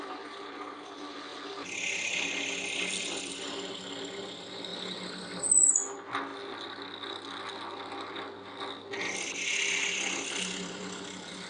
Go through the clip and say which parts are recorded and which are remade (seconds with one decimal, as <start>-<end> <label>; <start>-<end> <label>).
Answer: 0.0-11.5 recorded